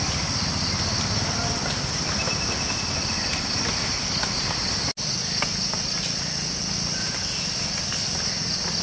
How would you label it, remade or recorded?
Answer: recorded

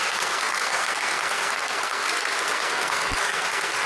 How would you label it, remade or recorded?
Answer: remade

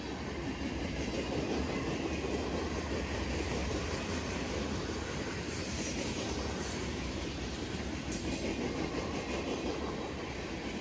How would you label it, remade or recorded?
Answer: recorded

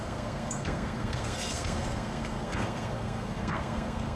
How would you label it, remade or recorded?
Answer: remade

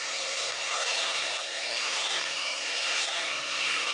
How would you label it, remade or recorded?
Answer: remade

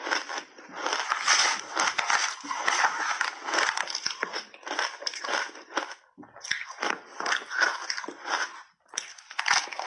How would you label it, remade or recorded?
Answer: recorded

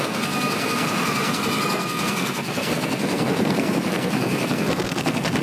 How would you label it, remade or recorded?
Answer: remade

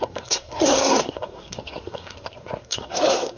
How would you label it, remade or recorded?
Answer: remade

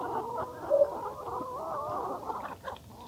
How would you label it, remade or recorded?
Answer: recorded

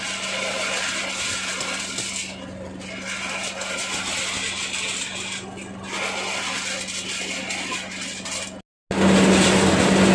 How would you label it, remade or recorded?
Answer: recorded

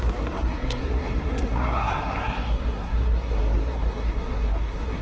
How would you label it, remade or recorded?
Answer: remade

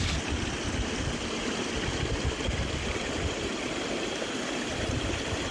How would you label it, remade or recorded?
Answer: recorded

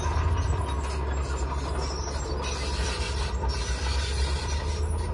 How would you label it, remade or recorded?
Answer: recorded